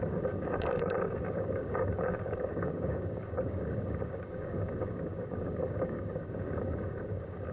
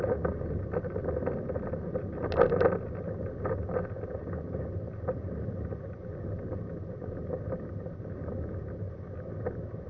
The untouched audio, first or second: second